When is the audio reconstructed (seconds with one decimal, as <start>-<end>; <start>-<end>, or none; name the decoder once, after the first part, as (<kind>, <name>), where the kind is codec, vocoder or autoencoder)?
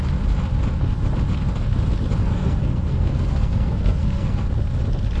2.2-4.5 (codec, SNAC)